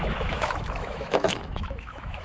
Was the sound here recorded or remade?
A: remade